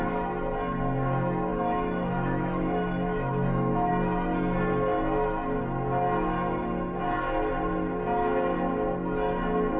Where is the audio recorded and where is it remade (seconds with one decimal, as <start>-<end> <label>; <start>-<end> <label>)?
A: 0.0-1.5 recorded; 1.5-3.9 remade; 3.9-9.8 recorded